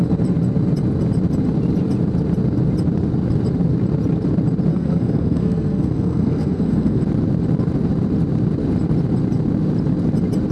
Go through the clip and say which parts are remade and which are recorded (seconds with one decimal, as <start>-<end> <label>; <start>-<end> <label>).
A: 0.0-4.7 recorded; 4.7-7.0 remade; 7.0-10.5 recorded